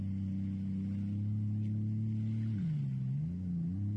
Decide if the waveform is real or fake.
real